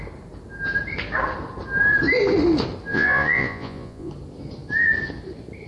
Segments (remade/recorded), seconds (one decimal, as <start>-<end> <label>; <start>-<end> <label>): 0.0-2.9 recorded; 2.9-4.1 remade; 4.1-5.7 recorded

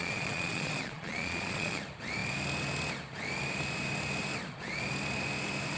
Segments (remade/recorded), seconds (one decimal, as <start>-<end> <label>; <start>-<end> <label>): 0.0-1.8 remade; 1.8-5.8 recorded